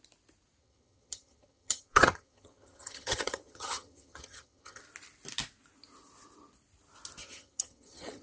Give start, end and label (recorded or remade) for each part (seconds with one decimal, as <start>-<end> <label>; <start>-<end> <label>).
0.0-0.6 recorded; 0.6-4.8 remade; 4.8-7.2 recorded; 7.2-8.2 remade